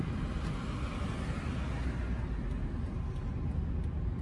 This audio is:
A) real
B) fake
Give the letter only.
A